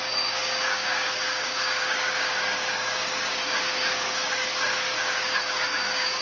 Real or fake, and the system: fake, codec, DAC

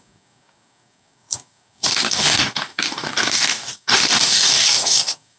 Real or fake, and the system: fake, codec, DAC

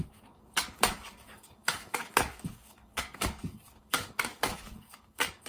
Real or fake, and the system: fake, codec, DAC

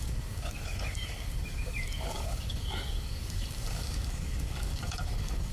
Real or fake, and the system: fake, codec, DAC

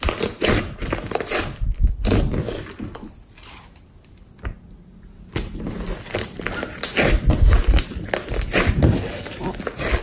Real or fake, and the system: real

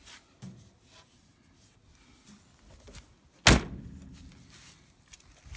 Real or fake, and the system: real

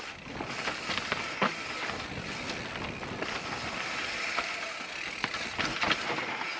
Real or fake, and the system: real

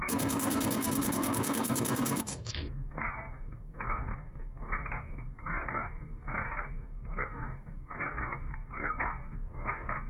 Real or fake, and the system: fake, codec, DAC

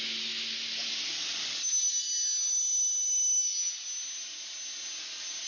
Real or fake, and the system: real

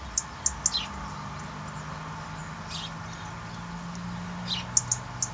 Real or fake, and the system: real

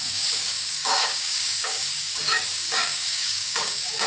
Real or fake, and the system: fake, codec, DAC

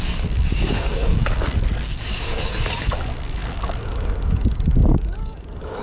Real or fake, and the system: fake, codec, DAC